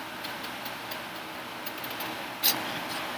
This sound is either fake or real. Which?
real